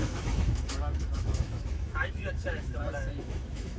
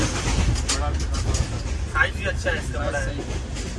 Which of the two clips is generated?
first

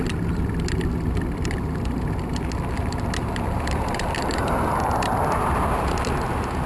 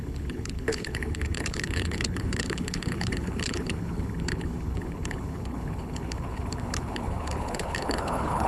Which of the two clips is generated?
second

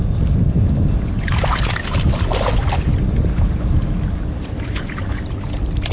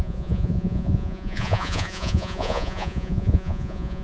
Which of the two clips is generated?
second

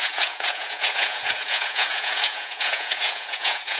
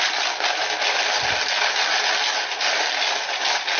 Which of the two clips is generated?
first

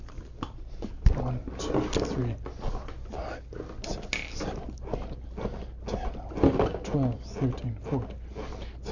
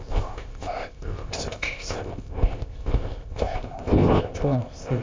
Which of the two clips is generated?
second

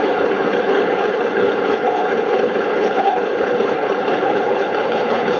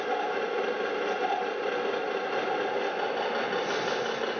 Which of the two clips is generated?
first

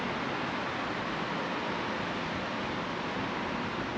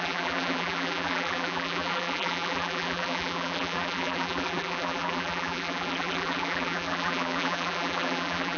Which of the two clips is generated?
second